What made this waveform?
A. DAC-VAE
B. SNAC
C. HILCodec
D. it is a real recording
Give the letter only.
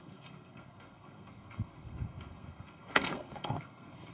B